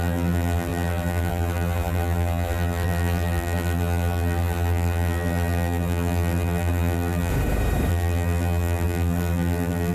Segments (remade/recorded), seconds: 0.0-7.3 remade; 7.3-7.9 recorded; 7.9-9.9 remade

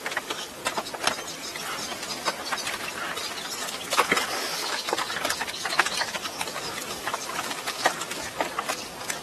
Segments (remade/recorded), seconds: 0.0-0.6 remade; 0.6-3.6 recorded; 3.6-9.2 remade

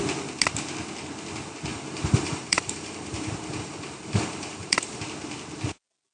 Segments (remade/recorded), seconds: 0.0-1.7 recorded; 1.7-5.0 remade; 5.0-6.1 recorded

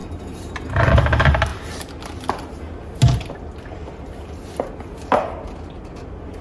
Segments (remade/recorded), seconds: 0.0-0.9 remade; 0.9-6.4 recorded

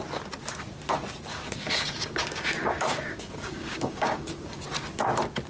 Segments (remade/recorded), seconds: 0.0-1.3 recorded; 1.3-4.6 remade; 4.6-5.5 recorded

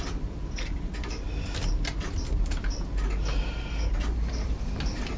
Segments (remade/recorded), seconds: 0.0-5.2 recorded

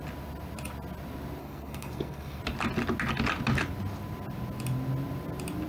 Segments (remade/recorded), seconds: 0.0-1.4 recorded; 1.4-2.4 remade; 2.4-5.7 recorded

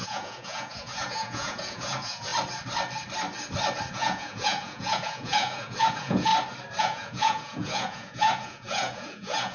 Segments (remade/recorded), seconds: 0.0-2.3 remade; 2.3-3.9 recorded; 3.9-6.3 remade; 6.3-6.8 recorded; 6.8-9.5 remade